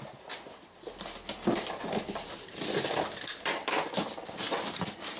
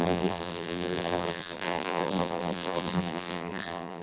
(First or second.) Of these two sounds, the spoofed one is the second